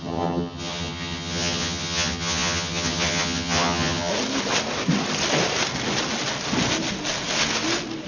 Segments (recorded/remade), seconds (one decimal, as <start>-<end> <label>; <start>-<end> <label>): 0.0-4.1 remade; 4.1-8.1 recorded